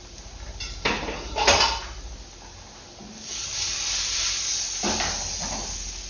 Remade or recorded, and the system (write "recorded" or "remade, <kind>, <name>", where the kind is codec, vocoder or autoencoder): recorded